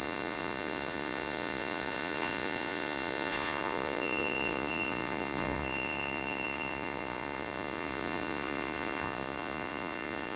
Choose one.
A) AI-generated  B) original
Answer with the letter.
A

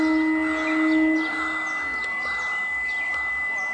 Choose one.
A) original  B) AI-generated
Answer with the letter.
A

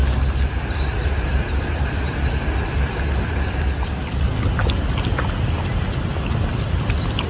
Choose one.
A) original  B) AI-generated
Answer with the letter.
A